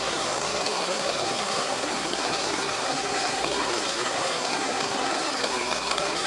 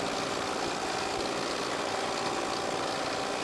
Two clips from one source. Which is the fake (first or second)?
first